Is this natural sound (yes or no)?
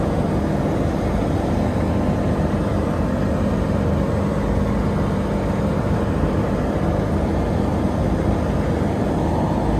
yes